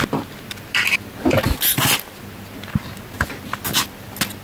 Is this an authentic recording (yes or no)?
yes